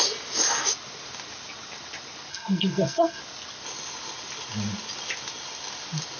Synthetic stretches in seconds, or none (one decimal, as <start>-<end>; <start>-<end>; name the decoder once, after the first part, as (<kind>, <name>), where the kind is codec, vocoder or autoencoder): 2.3-3.2 (codec, SNAC)